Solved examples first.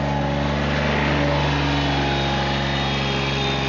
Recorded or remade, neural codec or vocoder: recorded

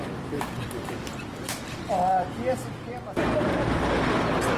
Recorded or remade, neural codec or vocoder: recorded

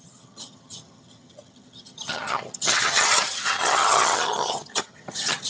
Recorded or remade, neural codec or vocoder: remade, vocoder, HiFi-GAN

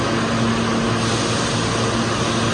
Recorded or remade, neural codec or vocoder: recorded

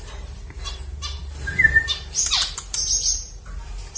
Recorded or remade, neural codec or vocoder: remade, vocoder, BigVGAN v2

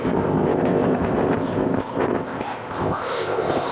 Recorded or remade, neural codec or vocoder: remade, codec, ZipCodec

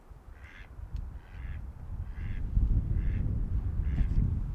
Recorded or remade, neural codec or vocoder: recorded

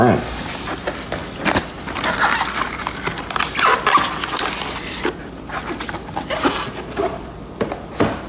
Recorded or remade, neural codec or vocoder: recorded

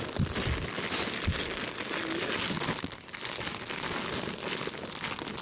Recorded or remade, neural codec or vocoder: recorded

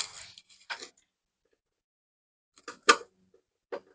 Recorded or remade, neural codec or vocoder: recorded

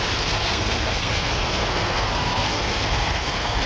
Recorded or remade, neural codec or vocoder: remade, codec, SNAC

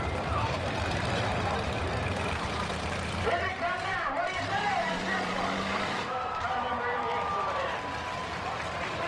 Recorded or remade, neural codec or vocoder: remade, vocoder, BigVGAN v2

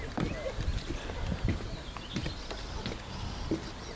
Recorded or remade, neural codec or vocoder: recorded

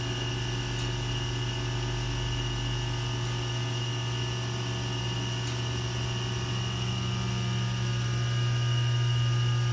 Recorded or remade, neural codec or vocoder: recorded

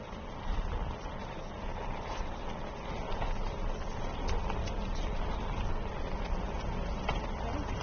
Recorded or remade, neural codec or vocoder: recorded